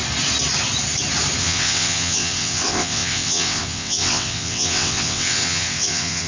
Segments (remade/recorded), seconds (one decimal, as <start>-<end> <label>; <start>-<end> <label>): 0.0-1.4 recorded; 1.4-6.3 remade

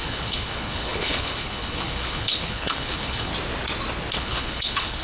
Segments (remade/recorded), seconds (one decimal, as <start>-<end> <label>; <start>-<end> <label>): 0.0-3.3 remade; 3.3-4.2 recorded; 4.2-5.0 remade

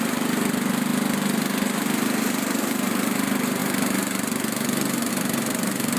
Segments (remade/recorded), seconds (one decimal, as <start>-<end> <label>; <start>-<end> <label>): 0.0-0.9 remade; 0.9-2.6 recorded; 2.6-3.6 remade; 3.6-5.1 recorded; 5.1-6.0 remade

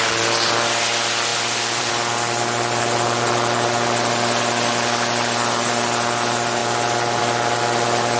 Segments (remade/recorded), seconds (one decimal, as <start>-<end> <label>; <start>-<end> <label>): 0.0-1.3 recorded; 1.3-1.9 remade; 1.9-8.2 recorded